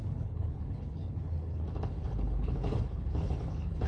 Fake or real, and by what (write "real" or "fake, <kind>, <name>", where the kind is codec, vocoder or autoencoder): fake, codec, HILCodec